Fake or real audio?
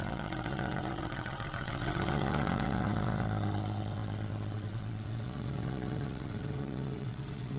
fake